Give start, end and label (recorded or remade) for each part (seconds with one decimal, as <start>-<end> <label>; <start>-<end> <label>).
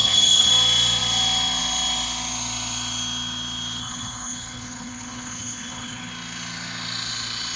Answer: 0.0-0.5 remade; 0.5-3.8 recorded; 3.8-6.1 remade; 6.1-7.6 recorded